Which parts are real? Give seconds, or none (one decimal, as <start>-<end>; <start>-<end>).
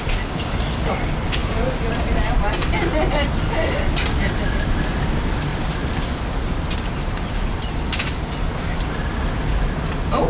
0.0-5.5; 8.2-10.3